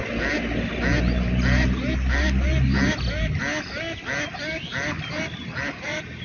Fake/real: real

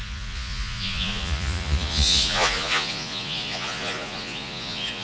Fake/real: fake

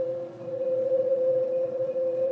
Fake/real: fake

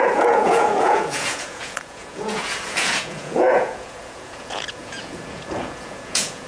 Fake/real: fake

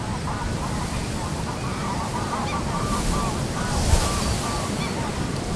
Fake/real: real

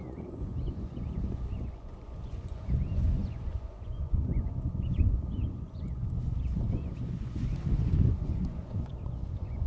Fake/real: fake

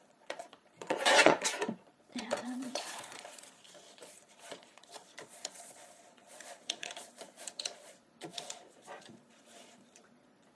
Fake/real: fake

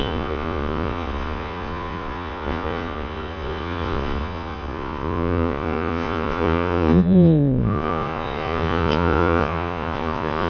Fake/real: fake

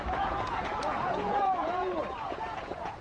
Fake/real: fake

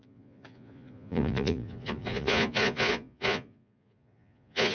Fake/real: fake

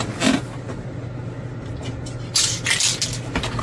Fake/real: real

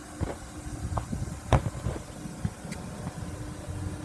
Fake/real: real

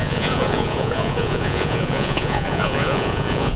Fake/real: fake